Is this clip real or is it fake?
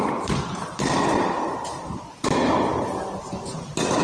real